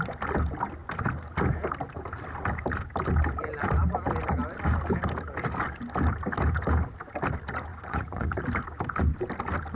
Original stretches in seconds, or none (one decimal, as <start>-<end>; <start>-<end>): 0.0-7.7; 8.4-9.8